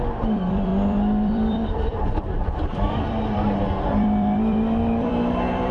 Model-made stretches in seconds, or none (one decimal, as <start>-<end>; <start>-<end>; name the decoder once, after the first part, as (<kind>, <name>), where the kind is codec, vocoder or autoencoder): 0.0-5.7 (vocoder, BigVGAN v2)